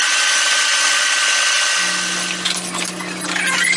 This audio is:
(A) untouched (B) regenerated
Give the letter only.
A